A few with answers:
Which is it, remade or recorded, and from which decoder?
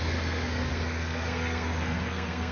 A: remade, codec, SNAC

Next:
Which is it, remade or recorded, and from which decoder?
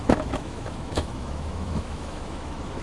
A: remade, autoencoder, DAC-VAE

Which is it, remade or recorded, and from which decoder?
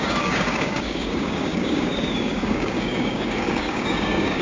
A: remade, codec, DAC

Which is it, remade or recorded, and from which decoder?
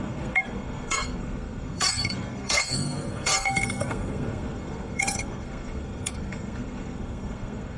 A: remade, codec, SNAC